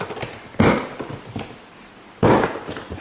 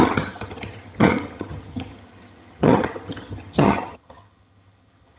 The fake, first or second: second